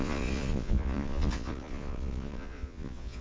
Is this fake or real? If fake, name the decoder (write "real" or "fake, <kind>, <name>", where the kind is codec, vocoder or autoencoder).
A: fake, vocoder, Vocos